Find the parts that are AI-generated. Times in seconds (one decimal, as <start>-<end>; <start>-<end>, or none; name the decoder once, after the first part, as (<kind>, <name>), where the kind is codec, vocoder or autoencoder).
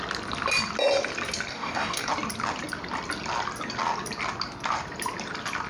1.5-2.1 (codec, DAC)